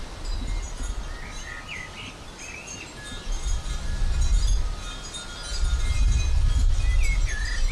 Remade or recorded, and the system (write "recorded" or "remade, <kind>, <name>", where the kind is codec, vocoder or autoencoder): recorded